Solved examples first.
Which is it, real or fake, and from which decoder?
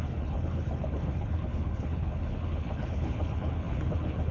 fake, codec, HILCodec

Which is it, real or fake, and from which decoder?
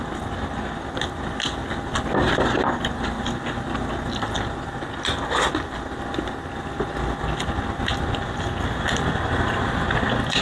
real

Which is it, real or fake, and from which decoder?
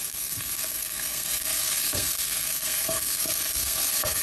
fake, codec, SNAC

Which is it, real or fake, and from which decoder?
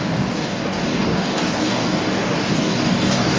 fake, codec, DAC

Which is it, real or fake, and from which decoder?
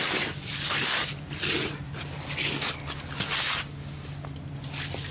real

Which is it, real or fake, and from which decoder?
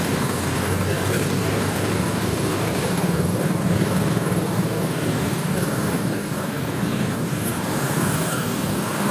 fake, codec, DAC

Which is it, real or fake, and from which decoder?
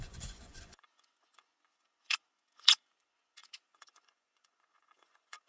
fake, vocoder, Vocos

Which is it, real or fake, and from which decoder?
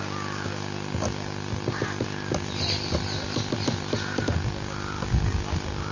real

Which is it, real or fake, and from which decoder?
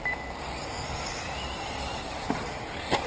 real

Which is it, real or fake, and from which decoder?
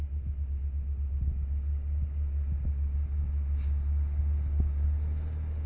real